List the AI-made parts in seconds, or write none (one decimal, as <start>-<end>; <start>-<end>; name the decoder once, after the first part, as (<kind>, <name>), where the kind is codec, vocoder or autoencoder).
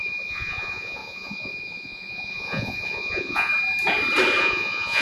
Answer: 0.0-3.5 (vocoder, Vocos); 4.4-5.0